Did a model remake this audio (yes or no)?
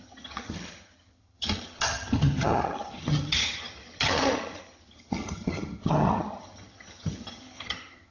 yes